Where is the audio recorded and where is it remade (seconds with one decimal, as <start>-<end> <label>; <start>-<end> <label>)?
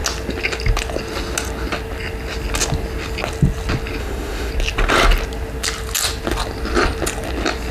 0.0-4.0 recorded; 4.0-4.5 remade; 4.5-7.7 recorded